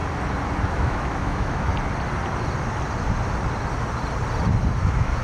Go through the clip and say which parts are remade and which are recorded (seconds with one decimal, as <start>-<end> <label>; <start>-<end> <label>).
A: 0.0-0.7 recorded; 0.7-1.7 remade; 1.7-4.8 recorded; 4.8-5.2 remade